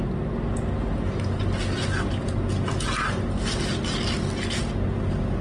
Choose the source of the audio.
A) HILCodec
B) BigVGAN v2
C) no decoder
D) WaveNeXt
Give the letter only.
C